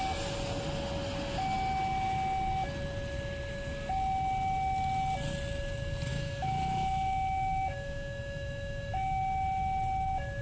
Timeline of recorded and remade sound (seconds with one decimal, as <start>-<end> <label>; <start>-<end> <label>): 0.0-6.1 recorded; 6.1-9.2 remade; 9.2-10.4 recorded